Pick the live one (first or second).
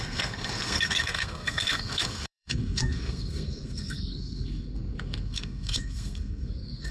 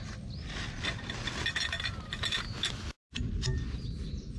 second